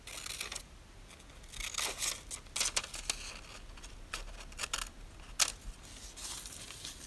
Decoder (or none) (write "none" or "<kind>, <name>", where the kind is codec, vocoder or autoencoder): none